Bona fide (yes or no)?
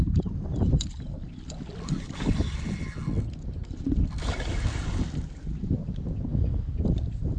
yes